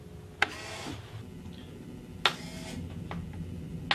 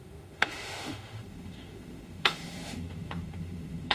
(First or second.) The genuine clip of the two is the first